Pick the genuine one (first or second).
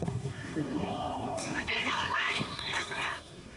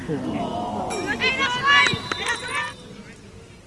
second